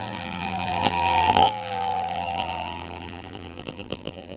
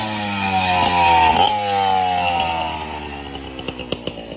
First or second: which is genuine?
second